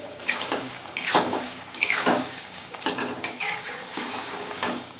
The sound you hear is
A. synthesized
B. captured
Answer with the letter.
A